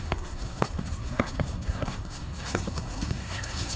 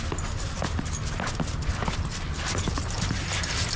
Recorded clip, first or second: second